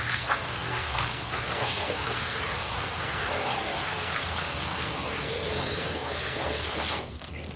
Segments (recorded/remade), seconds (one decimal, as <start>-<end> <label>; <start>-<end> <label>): 0.0-7.6 remade